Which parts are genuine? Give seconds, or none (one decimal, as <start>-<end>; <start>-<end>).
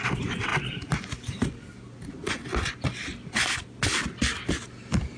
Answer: 0.0-5.2